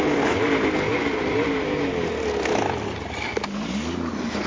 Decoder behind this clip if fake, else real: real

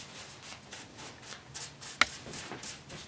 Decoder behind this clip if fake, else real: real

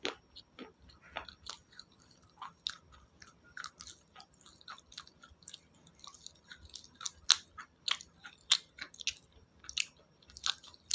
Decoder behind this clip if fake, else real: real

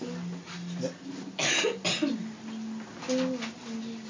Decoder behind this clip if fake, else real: real